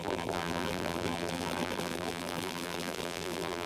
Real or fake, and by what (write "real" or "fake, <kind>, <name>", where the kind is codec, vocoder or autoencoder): fake, vocoder, BigVGAN v2